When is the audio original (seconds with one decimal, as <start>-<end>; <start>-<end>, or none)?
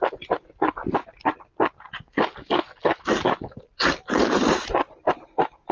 0.0-5.7